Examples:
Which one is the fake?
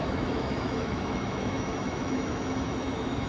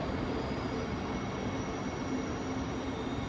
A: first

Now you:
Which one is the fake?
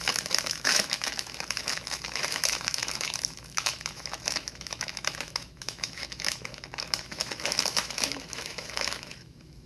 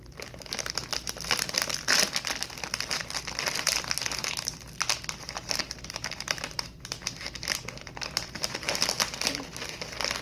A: first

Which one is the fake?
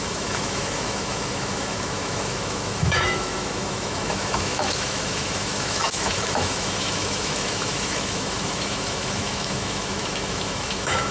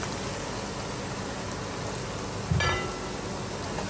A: first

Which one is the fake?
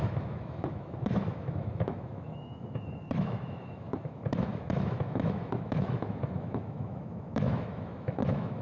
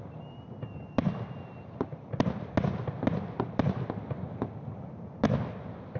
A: first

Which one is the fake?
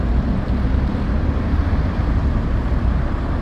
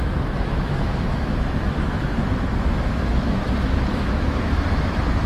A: second